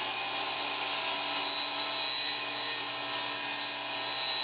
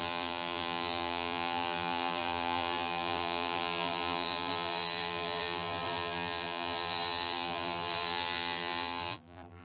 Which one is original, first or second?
first